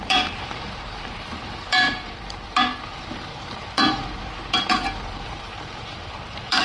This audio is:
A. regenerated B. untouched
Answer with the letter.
A